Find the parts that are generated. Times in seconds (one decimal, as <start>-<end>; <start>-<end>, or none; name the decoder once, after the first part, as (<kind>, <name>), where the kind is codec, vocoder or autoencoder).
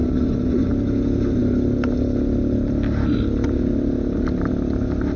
0.0-0.7 (vocoder, Vocos)